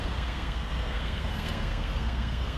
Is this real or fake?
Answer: fake